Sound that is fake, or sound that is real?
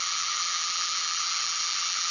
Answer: fake